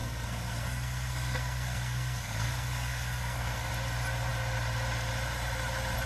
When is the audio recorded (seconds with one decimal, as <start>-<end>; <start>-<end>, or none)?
3.7-6.1